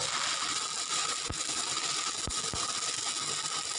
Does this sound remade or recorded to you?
recorded